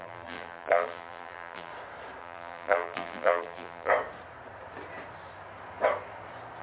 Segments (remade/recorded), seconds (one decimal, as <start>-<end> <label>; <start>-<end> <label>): 0.0-1.7 remade; 1.7-2.2 recorded; 2.2-3.9 remade; 3.9-6.6 recorded